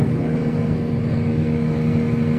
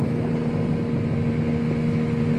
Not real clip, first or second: first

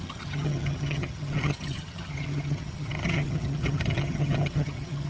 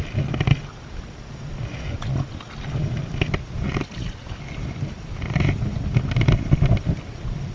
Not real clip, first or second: first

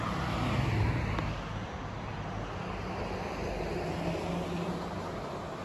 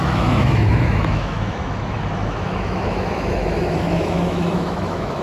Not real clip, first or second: second